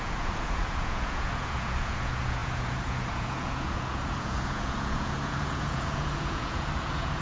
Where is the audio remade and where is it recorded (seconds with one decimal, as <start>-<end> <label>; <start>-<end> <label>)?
0.0-7.2 remade